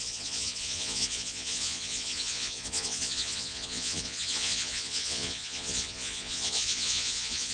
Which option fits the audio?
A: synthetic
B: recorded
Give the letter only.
A